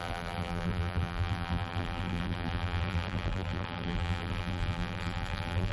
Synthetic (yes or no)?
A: yes